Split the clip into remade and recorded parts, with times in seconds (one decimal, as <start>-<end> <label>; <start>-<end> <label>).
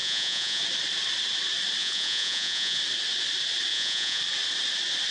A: 0.0-0.6 remade; 0.6-1.8 recorded; 1.8-2.8 remade; 2.8-3.7 recorded; 3.7-4.2 remade; 4.2-5.1 recorded